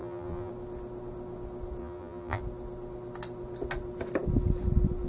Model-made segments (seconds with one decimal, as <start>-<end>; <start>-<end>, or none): 0.0-0.5; 1.8-2.4